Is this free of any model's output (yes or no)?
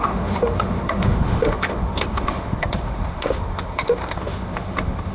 no